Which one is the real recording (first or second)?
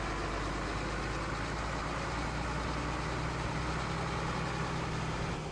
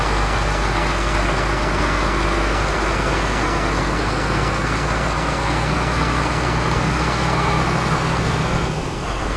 first